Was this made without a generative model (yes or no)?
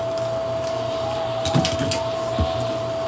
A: yes